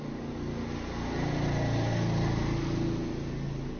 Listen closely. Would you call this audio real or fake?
real